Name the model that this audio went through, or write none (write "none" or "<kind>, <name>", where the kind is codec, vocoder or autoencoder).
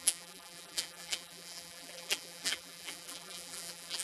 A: vocoder, BigVGAN v2